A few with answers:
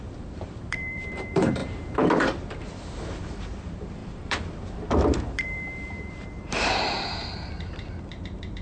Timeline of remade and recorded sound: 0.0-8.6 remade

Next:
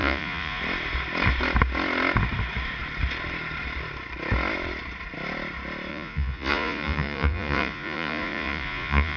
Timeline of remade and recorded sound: 0.0-0.6 remade; 0.6-5.9 recorded; 5.9-9.2 remade

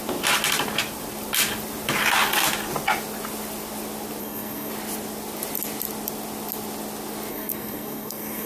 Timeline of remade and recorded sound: 0.0-4.2 recorded; 4.2-4.7 remade; 4.7-7.3 recorded; 7.3-8.5 remade

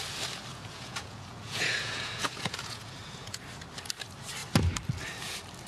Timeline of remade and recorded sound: 0.0-0.5 recorded; 0.5-3.4 remade; 3.4-5.7 recorded